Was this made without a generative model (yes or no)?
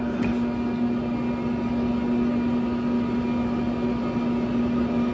yes